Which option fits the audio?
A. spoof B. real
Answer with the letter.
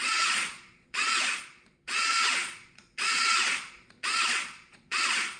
A